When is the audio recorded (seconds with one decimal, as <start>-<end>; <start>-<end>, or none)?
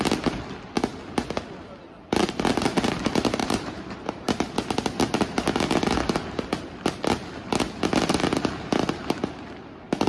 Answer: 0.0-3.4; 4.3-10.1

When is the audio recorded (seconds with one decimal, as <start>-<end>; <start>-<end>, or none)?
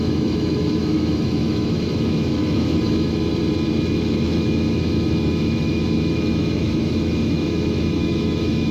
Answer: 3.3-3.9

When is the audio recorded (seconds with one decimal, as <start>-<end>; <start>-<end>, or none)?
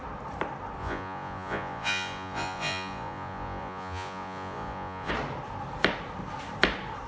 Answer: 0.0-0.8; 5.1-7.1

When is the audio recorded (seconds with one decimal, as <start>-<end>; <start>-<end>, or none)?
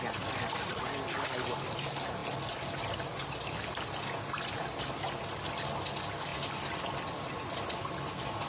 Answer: 0.0-8.5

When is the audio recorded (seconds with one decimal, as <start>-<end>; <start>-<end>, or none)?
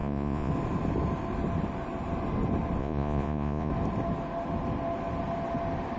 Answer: 0.5-2.8; 3.7-6.0